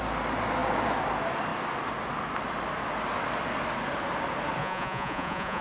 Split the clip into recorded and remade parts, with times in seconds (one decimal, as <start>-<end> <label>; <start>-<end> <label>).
0.0-4.6 recorded; 4.6-5.6 remade